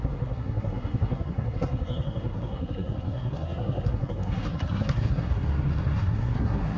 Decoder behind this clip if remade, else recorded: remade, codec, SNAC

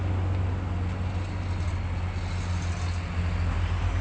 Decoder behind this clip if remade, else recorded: recorded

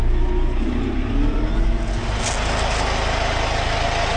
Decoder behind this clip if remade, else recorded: recorded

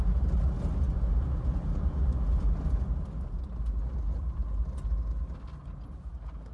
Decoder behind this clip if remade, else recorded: recorded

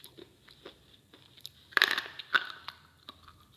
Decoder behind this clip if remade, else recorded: remade, vocoder, BigVGAN v2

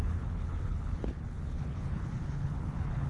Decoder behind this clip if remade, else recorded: remade, codec, HILCodec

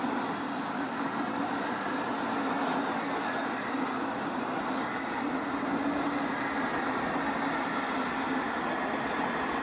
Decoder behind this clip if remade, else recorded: recorded